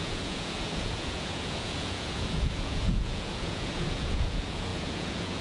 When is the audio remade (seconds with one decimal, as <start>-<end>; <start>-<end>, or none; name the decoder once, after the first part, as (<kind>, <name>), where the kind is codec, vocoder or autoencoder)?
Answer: 0.0-5.4 (vocoder, Vocos)